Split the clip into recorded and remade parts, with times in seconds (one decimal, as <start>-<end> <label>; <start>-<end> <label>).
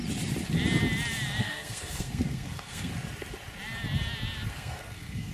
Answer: 0.0-1.4 recorded; 1.4-2.9 remade; 2.9-4.5 recorded; 4.5-5.3 remade